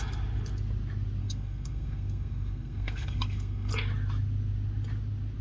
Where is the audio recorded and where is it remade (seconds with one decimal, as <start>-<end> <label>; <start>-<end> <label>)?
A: 0.0-1.2 recorded; 1.2-3.7 remade; 3.7-5.4 recorded